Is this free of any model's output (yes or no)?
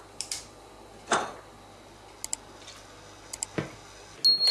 yes